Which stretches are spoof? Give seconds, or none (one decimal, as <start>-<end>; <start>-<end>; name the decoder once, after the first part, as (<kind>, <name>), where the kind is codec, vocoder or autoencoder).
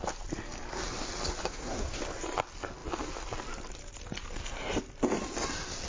1.4-2.0 (codec, SNAC)